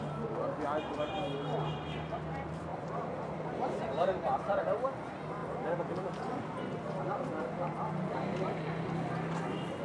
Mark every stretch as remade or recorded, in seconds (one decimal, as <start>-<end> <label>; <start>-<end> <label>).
0.0-9.8 recorded